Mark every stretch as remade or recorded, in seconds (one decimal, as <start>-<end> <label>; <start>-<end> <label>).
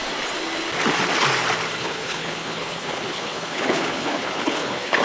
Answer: 0.0-1.8 recorded; 1.8-5.0 remade